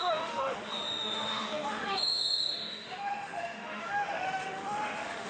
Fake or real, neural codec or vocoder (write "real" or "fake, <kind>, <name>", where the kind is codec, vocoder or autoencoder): fake, autoencoder, DAC-VAE